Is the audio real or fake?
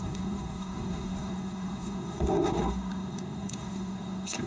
fake